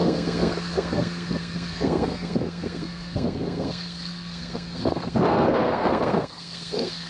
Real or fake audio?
fake